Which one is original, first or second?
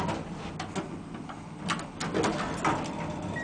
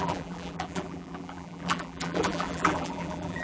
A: first